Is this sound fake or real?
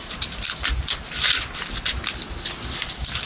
real